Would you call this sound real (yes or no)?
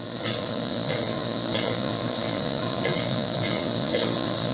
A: no